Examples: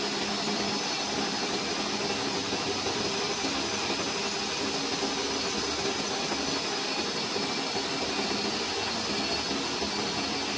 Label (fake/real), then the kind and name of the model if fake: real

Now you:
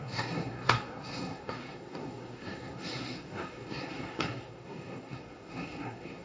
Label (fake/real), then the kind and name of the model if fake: fake, codec, SNAC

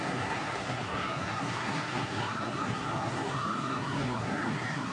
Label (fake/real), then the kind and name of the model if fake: fake, codec, SNAC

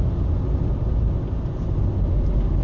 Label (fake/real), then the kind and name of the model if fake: real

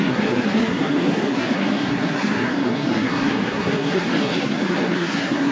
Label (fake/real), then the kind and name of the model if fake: fake, codec, SNAC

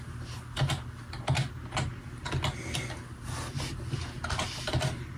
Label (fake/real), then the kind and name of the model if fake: real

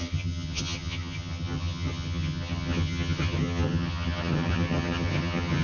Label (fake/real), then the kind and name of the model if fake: fake, vocoder, HiFi-GAN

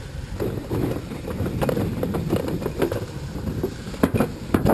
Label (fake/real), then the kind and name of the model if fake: real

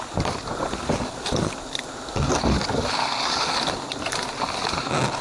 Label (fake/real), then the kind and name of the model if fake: real